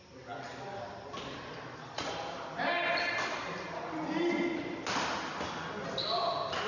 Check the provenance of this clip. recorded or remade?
recorded